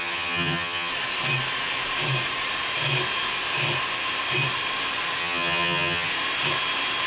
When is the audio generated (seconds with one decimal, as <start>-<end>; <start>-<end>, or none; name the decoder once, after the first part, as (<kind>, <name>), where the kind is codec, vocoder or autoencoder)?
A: 0.0-0.9 (vocoder, HiFi-GAN); 5.2-6.1